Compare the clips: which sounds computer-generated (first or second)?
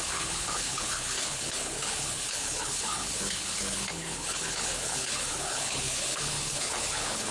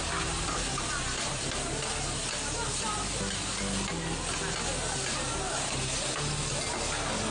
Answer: first